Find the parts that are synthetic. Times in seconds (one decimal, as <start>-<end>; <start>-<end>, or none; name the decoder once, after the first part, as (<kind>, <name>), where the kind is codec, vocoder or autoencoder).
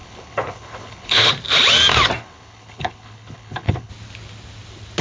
0.0-1.3 (codec, HILCodec); 2.2-3.9